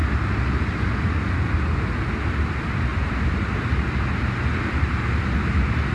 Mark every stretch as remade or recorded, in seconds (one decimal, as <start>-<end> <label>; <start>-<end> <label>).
0.0-5.9 recorded